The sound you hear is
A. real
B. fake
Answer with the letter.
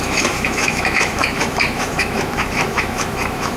B